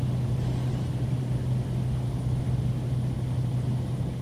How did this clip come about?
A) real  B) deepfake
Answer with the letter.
A